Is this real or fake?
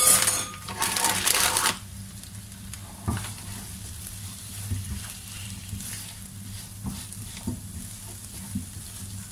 fake